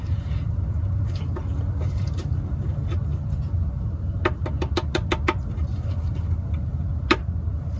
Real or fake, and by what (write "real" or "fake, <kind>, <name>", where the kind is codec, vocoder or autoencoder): real